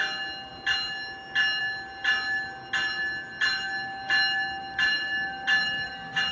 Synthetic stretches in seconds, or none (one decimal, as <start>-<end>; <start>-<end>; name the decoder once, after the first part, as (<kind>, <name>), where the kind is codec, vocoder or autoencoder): none